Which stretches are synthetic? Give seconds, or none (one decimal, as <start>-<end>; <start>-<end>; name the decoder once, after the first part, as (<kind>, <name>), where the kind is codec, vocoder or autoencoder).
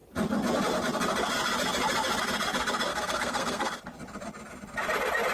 2.9-3.8 (codec, SNAC)